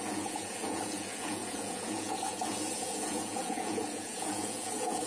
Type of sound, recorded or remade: remade